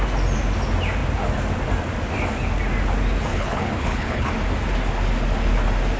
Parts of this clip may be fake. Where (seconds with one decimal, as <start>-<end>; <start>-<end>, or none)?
3.3-4.3